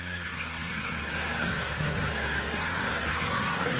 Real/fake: fake